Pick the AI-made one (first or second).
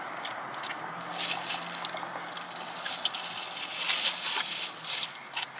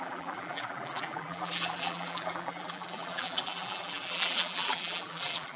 second